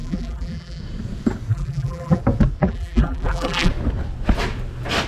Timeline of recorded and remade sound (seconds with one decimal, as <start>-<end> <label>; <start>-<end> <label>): 0.0-0.8 remade; 0.8-1.5 recorded; 1.5-2.2 remade; 2.2-2.6 recorded; 2.6-3.7 remade; 3.7-5.1 recorded